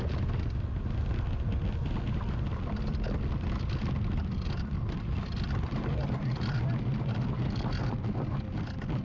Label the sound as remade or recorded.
recorded